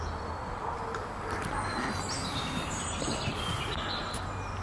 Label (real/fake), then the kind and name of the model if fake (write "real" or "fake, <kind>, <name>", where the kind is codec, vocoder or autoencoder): real